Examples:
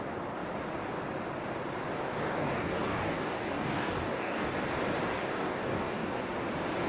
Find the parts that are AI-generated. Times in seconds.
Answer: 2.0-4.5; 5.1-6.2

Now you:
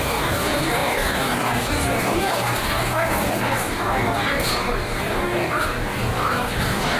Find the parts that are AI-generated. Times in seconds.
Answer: 0.0-7.0

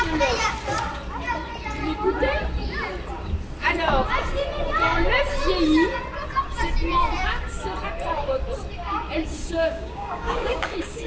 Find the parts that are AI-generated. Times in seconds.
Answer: 9.4-11.1

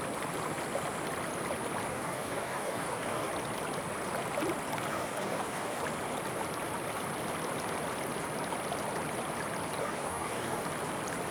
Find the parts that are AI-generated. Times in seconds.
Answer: 1.9-3.3; 4.9-5.8; 9.8-10.6